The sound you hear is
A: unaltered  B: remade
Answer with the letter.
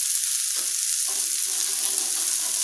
A